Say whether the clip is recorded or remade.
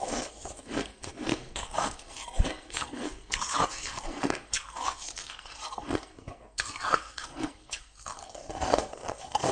remade